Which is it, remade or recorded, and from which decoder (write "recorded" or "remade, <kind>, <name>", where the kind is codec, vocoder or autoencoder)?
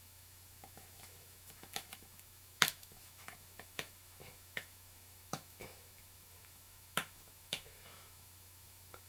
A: remade, autoencoder, DAC-VAE